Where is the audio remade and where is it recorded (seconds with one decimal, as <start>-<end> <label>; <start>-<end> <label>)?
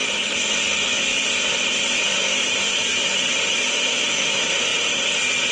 0.0-1.1 recorded; 1.1-3.5 remade; 3.5-5.5 recorded